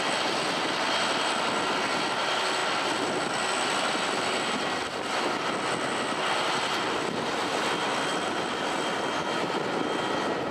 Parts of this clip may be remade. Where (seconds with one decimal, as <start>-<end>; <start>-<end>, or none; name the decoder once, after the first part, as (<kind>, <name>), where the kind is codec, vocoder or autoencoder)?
none